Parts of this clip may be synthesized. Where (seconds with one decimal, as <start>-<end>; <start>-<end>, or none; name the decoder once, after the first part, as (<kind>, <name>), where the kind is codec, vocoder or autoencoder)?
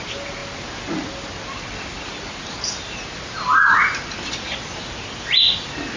none